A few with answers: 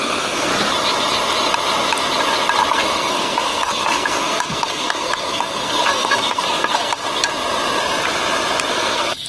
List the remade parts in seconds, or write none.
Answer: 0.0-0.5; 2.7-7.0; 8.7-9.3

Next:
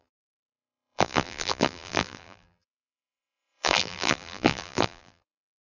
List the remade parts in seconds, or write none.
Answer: 0.0-5.6

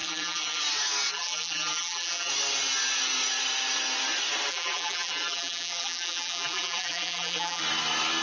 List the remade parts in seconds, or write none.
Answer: 0.0-0.6; 1.1-2.3; 4.5-7.6

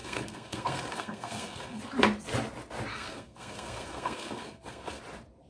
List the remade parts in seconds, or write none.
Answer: 0.0-1.8; 2.9-5.0

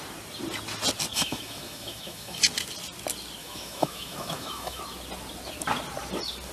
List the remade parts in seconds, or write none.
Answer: 1.1-2.4; 3.4-4.8

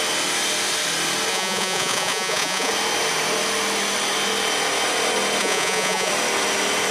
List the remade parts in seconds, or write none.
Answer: 1.3-2.7; 5.4-6.1

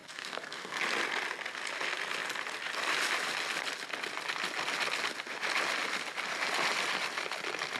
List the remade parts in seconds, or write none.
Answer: 0.0-0.8